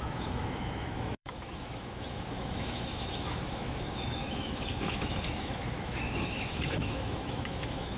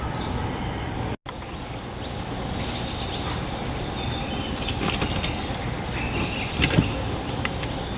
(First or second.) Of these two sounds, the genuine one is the second